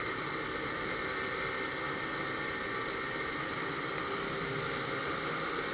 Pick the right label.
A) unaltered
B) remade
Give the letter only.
A